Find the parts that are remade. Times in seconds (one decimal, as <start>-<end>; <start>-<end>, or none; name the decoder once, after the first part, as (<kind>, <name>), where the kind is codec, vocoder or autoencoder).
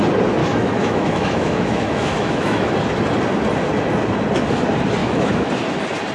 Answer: 0.4-2.7 (autoencoder, DAC-VAE); 5.0-5.5